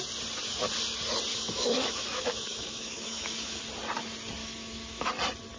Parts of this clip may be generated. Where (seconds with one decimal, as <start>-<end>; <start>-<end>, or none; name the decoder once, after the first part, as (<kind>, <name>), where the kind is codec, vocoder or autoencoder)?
1.3-3.6 (autoencoder, DAC-VAE); 4.4-5.1